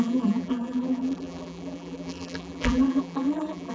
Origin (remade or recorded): remade